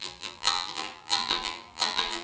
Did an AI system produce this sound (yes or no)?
yes